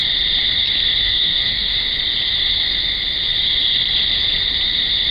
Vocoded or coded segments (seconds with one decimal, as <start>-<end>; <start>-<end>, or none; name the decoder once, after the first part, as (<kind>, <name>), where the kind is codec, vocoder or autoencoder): 1.0-1.7 (codec, SNAC)